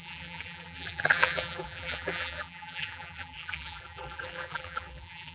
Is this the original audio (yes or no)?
no